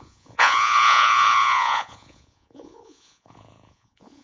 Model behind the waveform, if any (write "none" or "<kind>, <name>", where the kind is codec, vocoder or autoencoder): vocoder, Vocos